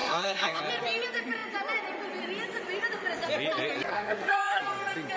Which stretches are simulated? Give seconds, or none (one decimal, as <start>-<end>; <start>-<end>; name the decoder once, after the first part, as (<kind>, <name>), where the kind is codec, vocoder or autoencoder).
0.0-0.6 (codec, SNAC); 3.9-4.6